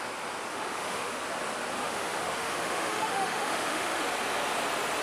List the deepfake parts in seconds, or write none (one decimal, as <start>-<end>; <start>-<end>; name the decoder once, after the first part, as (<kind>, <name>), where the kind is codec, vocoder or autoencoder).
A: 0.5-1.2 (autoencoder, DAC-VAE); 1.8-4.0